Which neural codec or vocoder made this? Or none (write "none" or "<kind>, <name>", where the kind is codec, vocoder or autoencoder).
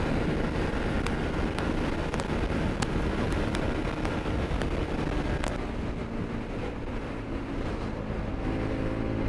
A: none